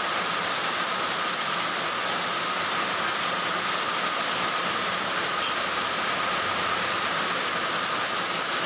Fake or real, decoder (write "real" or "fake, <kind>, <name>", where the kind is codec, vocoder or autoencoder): real